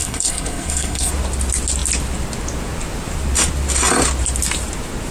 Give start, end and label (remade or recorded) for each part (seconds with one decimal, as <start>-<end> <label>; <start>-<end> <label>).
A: 0.0-1.1 remade; 1.1-5.1 recorded